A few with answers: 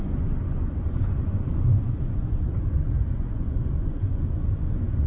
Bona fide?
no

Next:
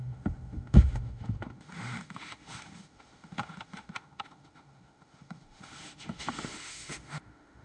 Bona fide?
no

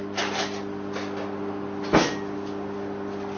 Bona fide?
yes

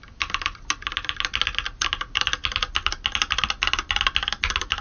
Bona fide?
yes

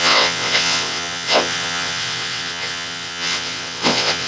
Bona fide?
no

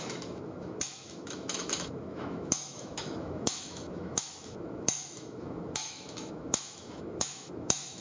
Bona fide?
no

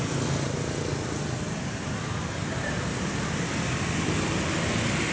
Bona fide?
yes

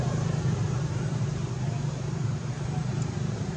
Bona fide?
no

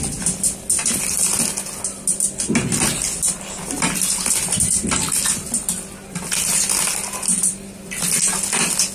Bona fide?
yes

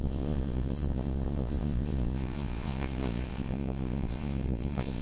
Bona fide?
no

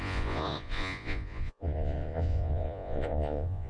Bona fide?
no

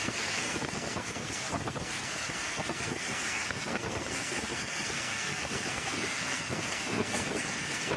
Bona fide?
no